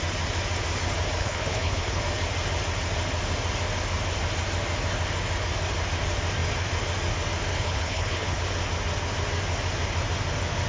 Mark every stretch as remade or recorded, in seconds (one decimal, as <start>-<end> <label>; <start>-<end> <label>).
0.0-1.2 recorded; 1.2-2.0 remade; 2.0-7.5 recorded; 7.5-8.4 remade; 8.4-10.7 recorded